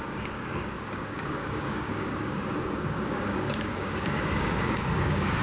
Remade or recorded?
remade